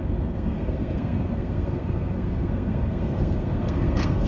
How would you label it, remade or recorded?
remade